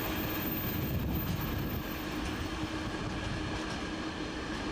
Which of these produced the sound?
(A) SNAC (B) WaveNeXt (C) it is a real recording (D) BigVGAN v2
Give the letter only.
C